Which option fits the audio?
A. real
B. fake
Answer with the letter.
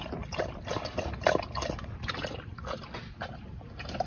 A